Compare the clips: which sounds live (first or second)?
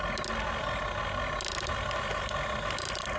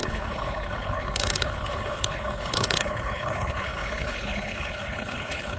first